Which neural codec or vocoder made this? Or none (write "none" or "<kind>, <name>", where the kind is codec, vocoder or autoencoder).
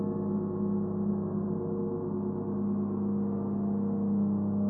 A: none